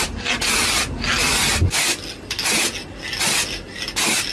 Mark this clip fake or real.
real